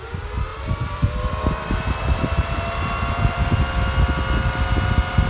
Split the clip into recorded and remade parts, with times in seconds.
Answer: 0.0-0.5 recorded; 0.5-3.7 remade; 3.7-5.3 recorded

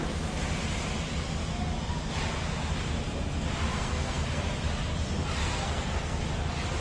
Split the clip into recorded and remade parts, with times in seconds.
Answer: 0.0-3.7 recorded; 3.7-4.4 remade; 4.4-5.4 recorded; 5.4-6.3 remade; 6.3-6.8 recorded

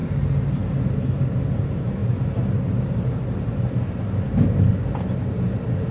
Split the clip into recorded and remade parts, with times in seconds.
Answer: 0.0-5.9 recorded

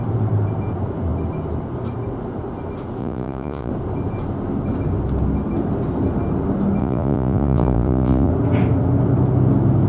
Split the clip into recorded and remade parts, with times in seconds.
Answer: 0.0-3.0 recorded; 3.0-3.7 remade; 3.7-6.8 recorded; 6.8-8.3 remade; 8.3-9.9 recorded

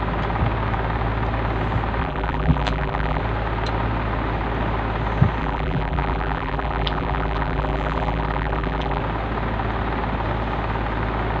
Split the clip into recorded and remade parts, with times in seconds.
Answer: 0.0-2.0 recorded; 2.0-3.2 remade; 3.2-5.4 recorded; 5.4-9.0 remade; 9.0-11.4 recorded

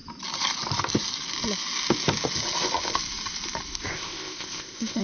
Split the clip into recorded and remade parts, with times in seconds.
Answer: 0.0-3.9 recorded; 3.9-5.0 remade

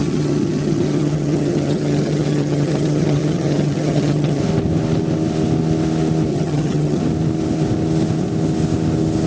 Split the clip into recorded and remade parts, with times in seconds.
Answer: 0.0-4.4 remade; 4.4-6.3 recorded; 6.3-7.0 remade; 7.0-9.3 recorded

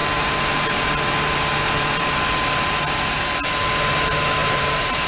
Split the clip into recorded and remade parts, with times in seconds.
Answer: 0.0-4.4 recorded; 4.4-5.1 remade